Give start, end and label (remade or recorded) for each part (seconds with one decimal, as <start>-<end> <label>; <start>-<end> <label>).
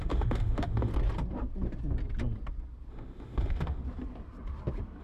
0.0-0.9 remade; 0.9-2.9 recorded; 2.9-3.8 remade; 3.8-5.0 recorded